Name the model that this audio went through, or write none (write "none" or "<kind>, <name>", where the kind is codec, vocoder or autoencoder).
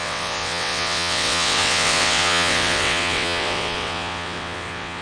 vocoder, WaveNeXt